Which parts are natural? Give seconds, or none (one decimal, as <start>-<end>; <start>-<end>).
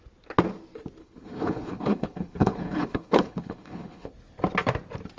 0.0-1.0; 4.1-5.2